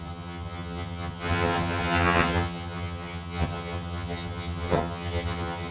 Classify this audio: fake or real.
fake